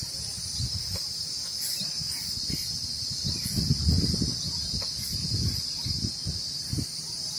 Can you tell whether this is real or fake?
real